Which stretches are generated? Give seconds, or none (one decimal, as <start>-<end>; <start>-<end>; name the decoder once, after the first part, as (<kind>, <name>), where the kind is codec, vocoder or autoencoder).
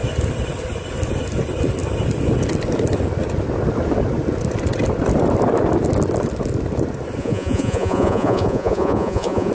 7.2-9.5 (vocoder, Vocos)